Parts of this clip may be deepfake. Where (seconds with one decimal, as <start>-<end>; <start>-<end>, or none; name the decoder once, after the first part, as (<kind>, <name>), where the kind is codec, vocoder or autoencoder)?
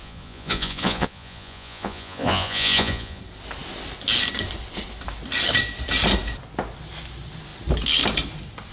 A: 0.0-3.2 (vocoder, Vocos)